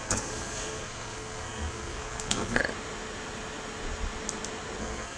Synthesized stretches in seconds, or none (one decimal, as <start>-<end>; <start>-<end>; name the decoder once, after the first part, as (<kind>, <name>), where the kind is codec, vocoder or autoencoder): 0.0-2.6 (codec, SNAC); 4.8-5.2